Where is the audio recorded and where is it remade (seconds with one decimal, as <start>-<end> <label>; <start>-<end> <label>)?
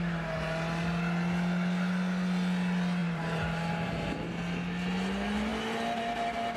0.0-3.0 recorded; 3.0-4.3 remade; 4.3-6.6 recorded